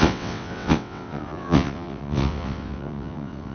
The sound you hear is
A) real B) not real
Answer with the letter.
B